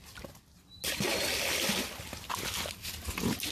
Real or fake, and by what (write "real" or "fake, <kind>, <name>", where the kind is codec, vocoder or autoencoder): real